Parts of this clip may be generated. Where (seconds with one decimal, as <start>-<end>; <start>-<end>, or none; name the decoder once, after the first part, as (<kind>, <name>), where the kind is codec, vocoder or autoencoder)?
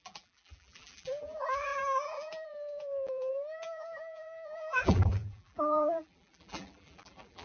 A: 0.0-7.4 (vocoder, BigVGAN v2)